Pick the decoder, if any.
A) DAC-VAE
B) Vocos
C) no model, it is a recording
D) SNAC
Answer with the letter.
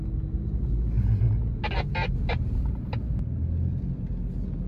C